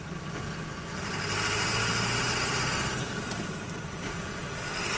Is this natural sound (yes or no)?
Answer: yes